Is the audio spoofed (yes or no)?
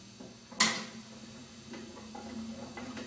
no